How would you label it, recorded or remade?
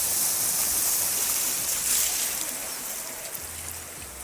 recorded